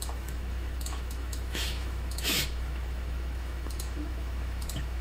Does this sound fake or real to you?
fake